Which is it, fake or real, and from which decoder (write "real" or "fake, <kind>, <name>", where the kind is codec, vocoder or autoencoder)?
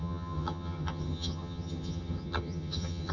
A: fake, vocoder, HiFi-GAN